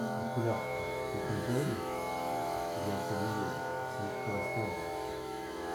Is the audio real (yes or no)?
no